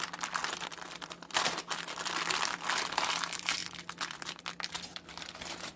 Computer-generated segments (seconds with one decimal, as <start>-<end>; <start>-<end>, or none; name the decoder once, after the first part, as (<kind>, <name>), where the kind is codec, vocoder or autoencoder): 0.0-3.6 (vocoder, BigVGAN v2); 4.7-5.8